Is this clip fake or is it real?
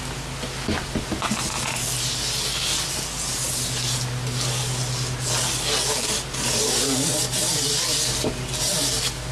real